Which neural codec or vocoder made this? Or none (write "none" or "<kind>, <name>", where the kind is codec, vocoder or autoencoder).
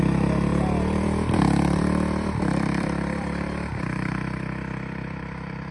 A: vocoder, BigVGAN v2